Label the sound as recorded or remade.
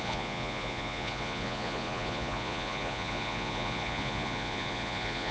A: remade